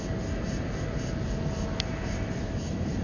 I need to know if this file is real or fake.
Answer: real